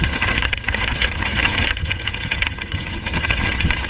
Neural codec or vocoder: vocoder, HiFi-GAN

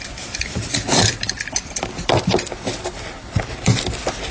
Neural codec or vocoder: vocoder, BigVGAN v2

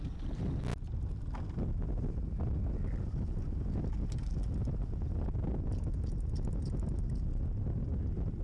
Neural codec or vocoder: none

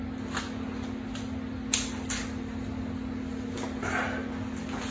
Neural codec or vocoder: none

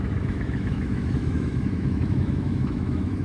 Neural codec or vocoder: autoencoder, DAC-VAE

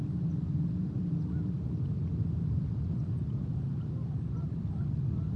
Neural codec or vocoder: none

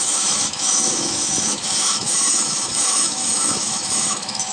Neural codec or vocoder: autoencoder, DAC-VAE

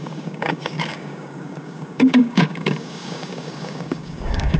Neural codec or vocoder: codec, DAC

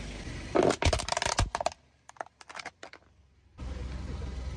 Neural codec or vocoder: none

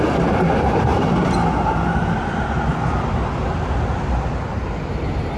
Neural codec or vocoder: none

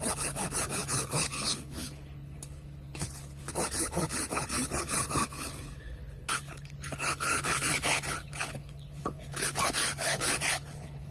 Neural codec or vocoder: codec, HILCodec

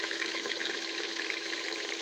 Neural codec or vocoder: autoencoder, DAC-VAE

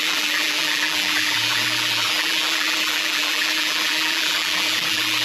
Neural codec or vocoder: vocoder, BigVGAN v2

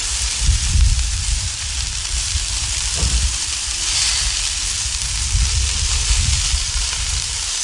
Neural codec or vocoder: vocoder, BigVGAN v2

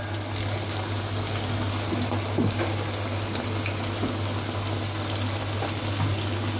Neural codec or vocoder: none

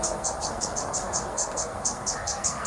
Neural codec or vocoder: codec, SNAC